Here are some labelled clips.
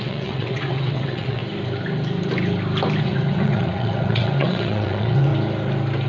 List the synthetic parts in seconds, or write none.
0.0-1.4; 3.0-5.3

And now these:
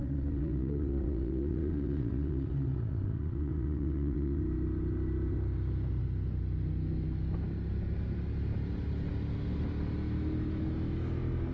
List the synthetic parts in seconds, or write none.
0.0-4.4

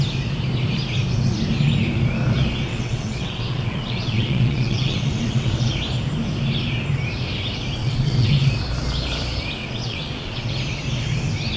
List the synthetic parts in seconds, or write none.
2.7-5.7; 7.8-8.5; 9.6-10.5

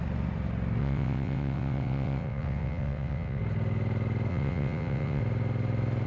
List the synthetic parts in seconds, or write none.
0.8-3.4; 4.3-5.2

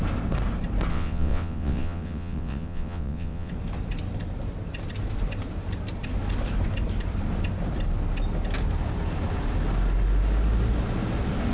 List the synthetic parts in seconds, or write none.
0.9-3.5

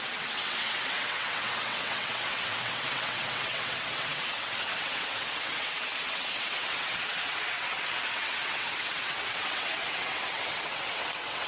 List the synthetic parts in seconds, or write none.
0.0-11.5